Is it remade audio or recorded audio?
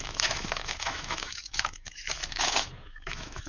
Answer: remade